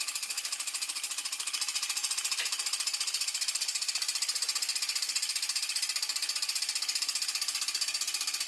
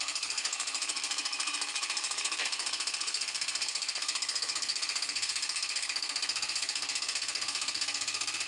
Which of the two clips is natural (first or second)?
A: first